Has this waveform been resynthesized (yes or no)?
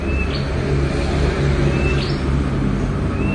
no